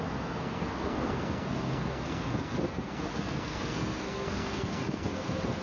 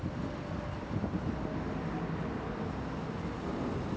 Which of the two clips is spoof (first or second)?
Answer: first